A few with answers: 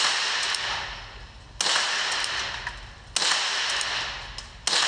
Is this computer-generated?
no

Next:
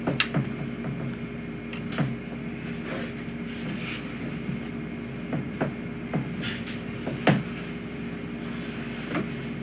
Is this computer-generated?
no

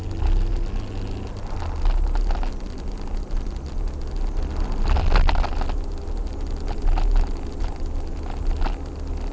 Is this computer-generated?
no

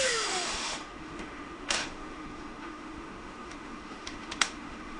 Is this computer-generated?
yes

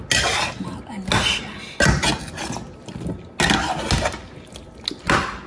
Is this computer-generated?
no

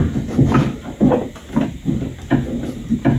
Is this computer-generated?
no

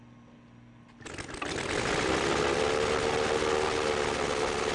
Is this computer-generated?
no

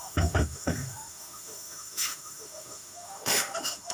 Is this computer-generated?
yes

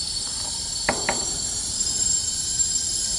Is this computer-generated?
no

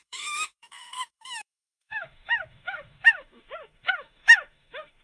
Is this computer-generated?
yes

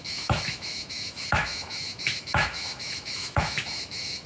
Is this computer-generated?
yes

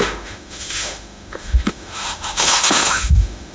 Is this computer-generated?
yes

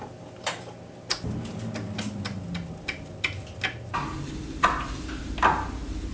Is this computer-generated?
no